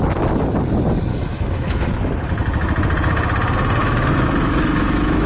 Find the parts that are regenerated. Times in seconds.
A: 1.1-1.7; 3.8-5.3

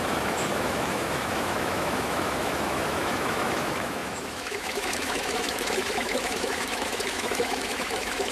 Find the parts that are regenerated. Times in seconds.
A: 0.0-8.3

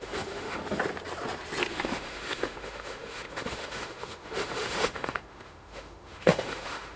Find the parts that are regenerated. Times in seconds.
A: 0.0-0.6; 1.7-7.0